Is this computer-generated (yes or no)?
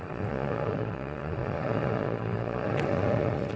yes